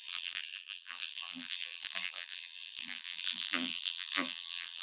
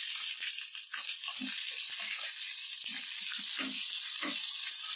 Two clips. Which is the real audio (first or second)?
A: second